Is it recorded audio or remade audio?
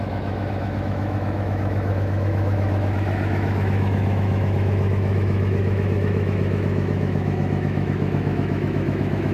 remade